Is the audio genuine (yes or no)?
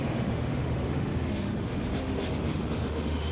no